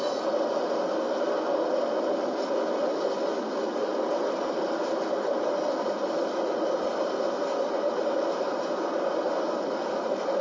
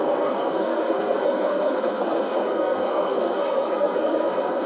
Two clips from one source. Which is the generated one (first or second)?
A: second